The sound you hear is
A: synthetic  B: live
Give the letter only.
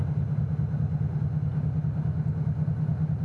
B